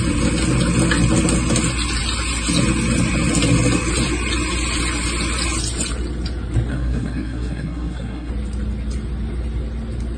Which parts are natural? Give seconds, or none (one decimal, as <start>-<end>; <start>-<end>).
0.0-6.7; 8.3-10.2

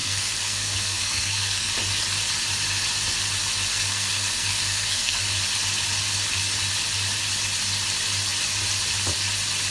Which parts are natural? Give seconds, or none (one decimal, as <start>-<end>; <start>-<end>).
1.7-3.7; 5.2-9.7

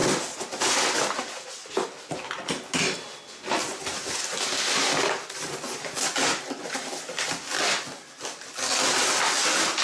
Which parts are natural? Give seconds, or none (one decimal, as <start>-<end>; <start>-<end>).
0.0-9.8

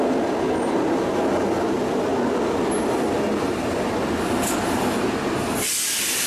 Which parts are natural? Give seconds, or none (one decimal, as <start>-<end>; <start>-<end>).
0.0-6.3